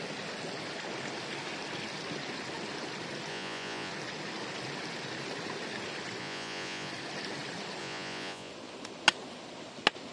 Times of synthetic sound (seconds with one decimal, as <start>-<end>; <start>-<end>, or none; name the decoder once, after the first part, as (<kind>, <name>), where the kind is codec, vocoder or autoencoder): 3.3-3.9 (vocoder, Vocos); 6.2-6.9; 7.8-8.5